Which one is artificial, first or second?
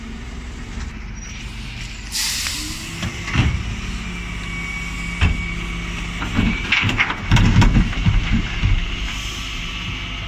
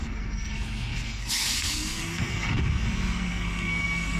second